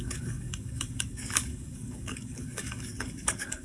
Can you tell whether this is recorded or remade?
remade